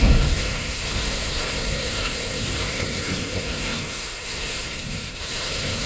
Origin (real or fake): fake